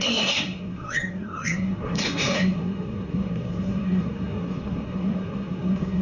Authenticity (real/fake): fake